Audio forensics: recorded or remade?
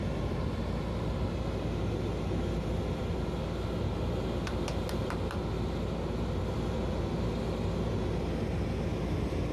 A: recorded